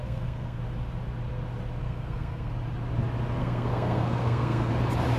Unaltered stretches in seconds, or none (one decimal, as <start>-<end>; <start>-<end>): 0.6-1.8; 2.5-3.4; 4.7-5.2